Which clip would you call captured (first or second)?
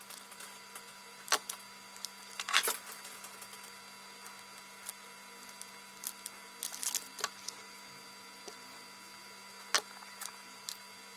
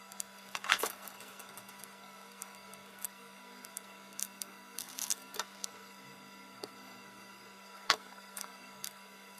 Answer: first